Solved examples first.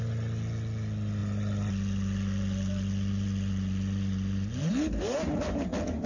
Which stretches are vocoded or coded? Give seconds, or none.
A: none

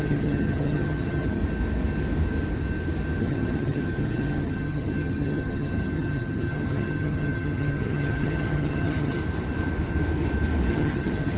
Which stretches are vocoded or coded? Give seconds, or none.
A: 0.0-1.4 (vocoder, HiFi-GAN); 3.2-9.2; 10.7-11.4

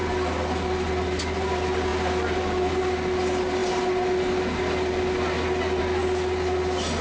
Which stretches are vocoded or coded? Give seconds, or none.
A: none